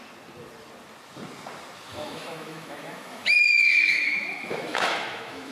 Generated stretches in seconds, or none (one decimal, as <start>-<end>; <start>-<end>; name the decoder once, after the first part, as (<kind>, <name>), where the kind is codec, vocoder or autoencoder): 1.9-5.5 (autoencoder, DAC-VAE)